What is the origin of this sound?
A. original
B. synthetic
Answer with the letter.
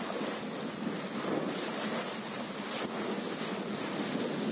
A